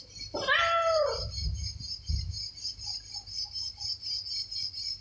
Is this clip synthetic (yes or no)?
no